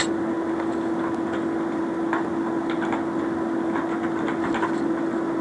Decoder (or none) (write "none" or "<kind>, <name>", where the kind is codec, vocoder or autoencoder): none